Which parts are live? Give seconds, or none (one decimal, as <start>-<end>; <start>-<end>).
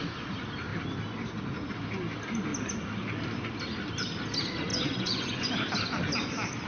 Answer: 0.0-4.7; 5.5-6.7